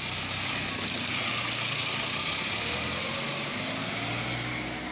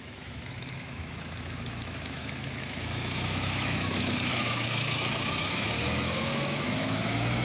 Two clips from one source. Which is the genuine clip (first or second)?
first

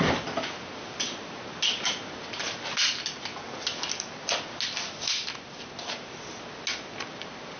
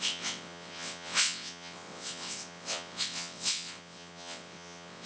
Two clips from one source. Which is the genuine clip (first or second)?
first